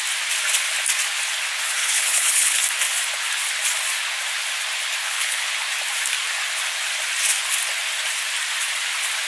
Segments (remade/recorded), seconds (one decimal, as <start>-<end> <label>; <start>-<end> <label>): 0.0-1.8 recorded; 1.8-2.6 remade; 2.6-5.0 recorded; 5.0-5.5 remade; 5.5-9.3 recorded